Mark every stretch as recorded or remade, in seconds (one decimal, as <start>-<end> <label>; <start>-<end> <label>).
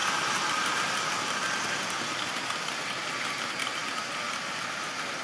0.0-3.1 remade; 3.1-3.8 recorded; 3.8-4.4 remade; 4.4-5.2 recorded